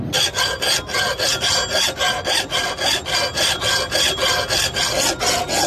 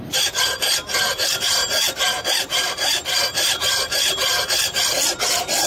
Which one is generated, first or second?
second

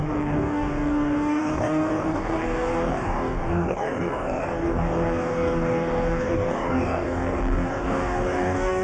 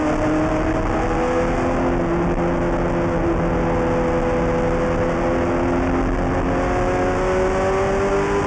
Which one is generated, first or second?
first